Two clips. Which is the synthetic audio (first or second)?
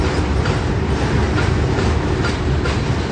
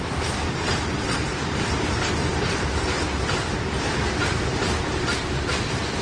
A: second